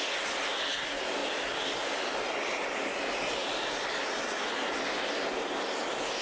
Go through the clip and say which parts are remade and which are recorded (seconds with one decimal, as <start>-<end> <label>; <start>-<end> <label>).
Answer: 0.0-1.2 recorded; 1.2-3.0 remade; 3.0-3.4 recorded; 3.4-3.9 remade; 3.9-6.2 recorded

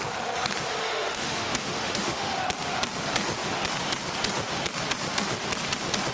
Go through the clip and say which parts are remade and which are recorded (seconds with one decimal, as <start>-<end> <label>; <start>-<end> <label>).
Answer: 0.0-0.8 recorded; 0.8-2.4 remade; 2.4-6.1 recorded

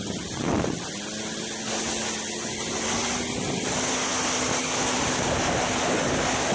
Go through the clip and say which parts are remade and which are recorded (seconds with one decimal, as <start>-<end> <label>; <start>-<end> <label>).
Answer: 0.0-6.5 recorded

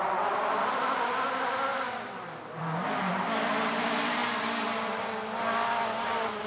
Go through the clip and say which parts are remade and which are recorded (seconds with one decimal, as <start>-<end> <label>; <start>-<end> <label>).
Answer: 0.0-1.7 recorded; 1.7-2.6 remade; 2.6-6.5 recorded